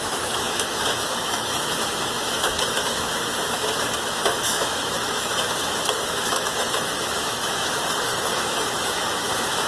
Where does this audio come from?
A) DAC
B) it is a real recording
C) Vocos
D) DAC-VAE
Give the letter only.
D